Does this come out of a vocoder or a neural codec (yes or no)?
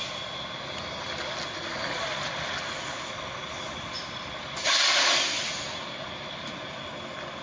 no